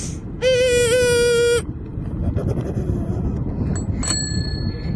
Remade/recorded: recorded